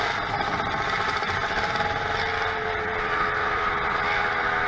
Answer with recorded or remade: recorded